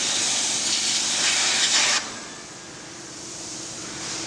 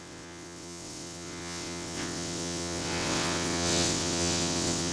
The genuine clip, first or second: first